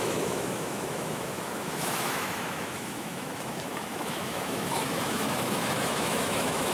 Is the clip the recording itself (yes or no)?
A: no